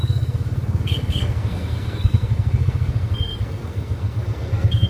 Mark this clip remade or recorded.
remade